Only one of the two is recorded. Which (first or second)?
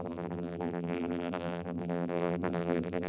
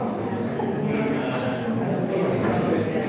second